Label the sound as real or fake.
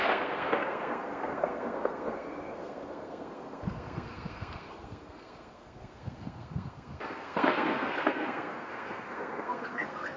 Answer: fake